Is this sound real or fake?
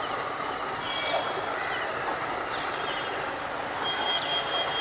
real